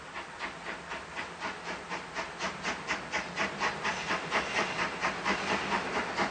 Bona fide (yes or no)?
yes